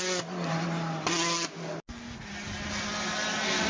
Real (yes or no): yes